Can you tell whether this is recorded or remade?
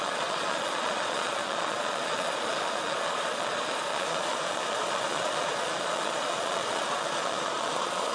remade